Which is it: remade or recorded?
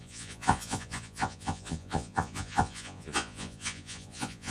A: remade